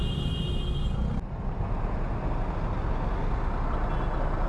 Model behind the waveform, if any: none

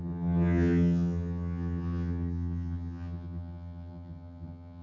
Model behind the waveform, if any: vocoder, HiFi-GAN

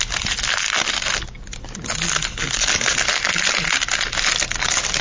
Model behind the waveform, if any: none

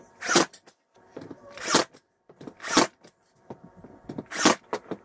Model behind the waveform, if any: vocoder, BigVGAN v2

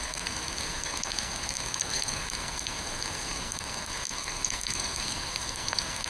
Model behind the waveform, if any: codec, SNAC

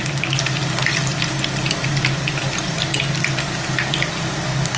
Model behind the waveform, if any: none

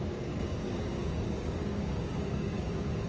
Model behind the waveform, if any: codec, DAC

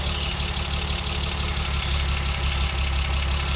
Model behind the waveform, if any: none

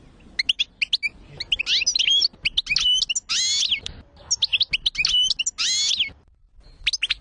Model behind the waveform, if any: none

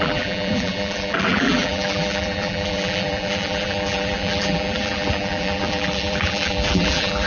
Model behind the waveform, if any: vocoder, BigVGAN v2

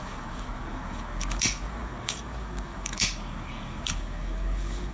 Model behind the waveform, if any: codec, DAC